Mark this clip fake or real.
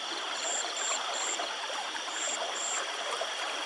fake